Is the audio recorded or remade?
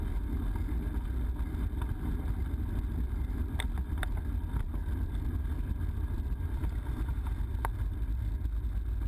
recorded